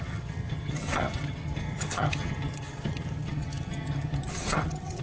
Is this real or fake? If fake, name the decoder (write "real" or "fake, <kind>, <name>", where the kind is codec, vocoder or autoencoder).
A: fake, vocoder, HiFi-GAN